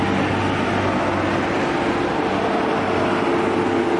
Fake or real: real